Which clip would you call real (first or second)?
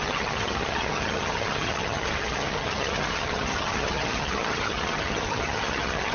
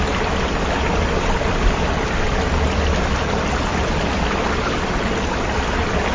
second